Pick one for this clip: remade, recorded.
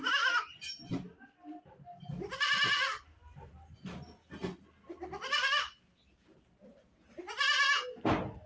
recorded